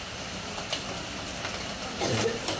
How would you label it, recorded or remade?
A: remade